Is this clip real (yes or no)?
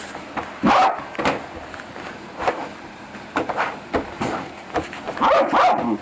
yes